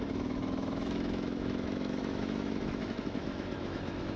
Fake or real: fake